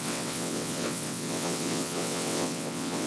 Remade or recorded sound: remade